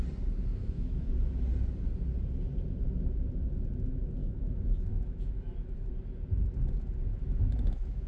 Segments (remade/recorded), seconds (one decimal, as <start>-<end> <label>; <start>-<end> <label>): 0.0-0.5 recorded; 0.5-1.1 remade; 1.1-4.2 recorded; 4.2-5.9 remade; 5.9-7.1 recorded; 7.1-8.1 remade